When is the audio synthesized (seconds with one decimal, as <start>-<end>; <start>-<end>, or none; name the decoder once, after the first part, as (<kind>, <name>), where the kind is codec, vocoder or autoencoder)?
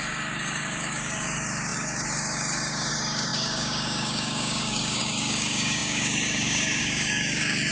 0.0-7.7 (codec, DAC)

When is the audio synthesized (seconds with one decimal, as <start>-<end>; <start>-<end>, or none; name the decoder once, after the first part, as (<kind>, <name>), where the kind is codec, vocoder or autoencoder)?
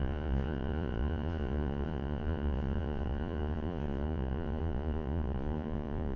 0.0-6.2 (vocoder, Vocos)